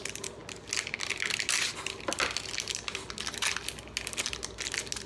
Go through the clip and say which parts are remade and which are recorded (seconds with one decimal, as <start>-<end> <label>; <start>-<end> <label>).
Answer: 0.0-5.1 recorded